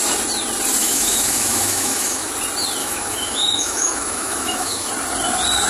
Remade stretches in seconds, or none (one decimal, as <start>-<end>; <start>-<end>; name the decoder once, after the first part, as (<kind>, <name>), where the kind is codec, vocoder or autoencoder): 0.8-2.3 (autoencoder, DAC-VAE); 2.8-4.9